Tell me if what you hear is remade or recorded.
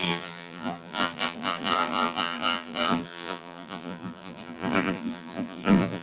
remade